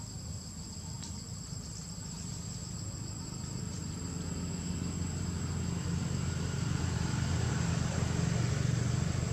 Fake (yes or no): no